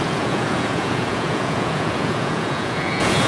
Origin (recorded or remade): remade